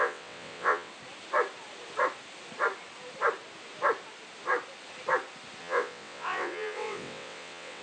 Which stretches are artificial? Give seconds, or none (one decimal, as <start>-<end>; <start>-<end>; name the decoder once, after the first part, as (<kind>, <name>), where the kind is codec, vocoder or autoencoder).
0.0-0.9 (vocoder, WaveNeXt); 5.6-7.8